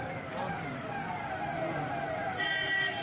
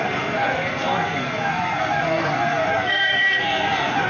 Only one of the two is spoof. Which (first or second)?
second